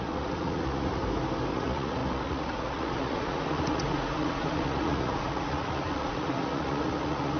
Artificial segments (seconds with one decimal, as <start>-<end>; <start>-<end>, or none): 0.0-1.0; 1.5-7.4